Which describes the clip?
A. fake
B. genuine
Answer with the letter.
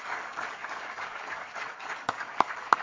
A